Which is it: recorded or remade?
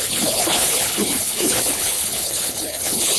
remade